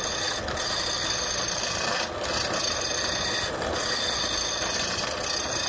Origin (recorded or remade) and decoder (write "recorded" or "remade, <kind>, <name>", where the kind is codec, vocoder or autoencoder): recorded